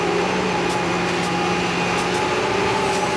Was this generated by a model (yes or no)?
no